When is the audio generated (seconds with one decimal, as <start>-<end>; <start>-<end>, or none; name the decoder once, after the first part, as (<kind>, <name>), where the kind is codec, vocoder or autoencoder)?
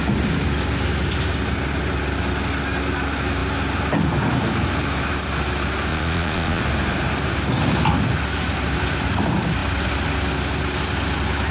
5.9-6.6 (vocoder, Vocos)